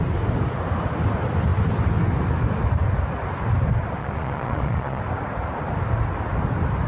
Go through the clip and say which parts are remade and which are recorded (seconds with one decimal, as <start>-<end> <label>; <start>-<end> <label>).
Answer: 0.0-4.0 recorded; 4.0-5.0 remade; 5.0-6.9 recorded